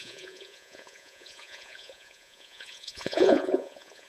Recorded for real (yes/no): no